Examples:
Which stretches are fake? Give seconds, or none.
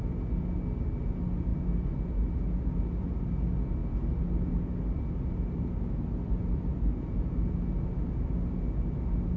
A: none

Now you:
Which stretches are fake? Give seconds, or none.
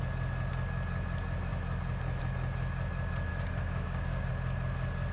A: 3.3-4.3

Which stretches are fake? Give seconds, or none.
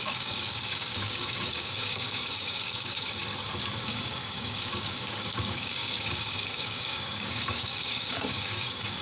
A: 0.0-3.2; 3.8-9.0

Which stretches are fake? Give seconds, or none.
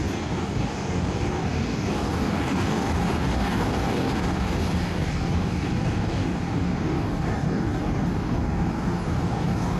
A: 0.0-9.8